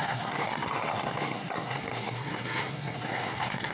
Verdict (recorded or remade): remade